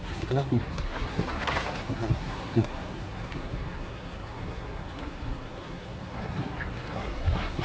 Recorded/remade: remade